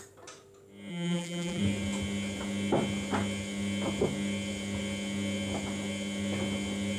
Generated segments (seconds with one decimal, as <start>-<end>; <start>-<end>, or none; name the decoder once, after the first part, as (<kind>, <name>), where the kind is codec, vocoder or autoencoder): 0.9-1.6 (vocoder, BigVGAN v2)